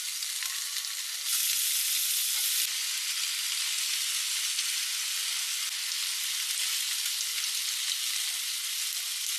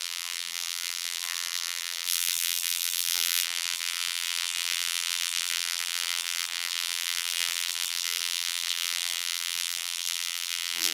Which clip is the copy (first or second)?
second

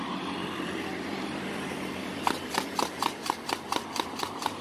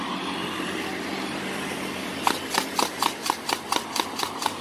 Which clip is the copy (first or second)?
first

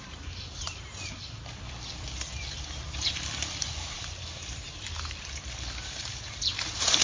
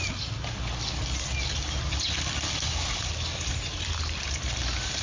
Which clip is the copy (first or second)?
first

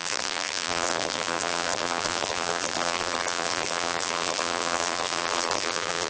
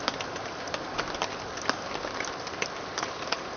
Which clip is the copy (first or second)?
first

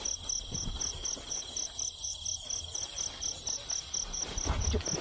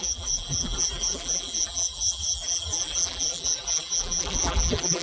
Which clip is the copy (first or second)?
second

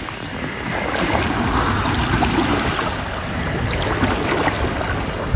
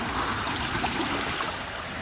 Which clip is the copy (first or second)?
second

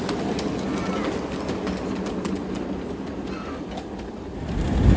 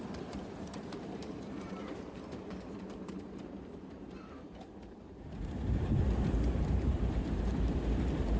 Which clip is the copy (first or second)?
second